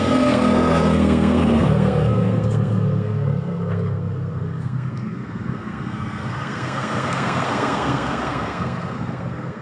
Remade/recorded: remade